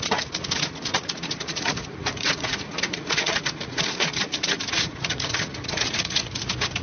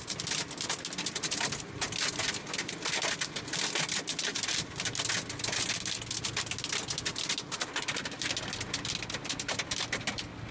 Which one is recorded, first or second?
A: second